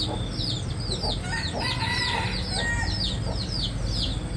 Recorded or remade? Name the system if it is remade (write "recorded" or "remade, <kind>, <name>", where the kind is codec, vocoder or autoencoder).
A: recorded